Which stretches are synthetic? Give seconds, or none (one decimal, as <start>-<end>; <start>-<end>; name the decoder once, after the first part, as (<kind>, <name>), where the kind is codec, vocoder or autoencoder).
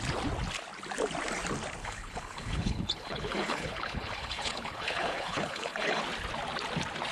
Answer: 1.8-6.0 (codec, HILCodec)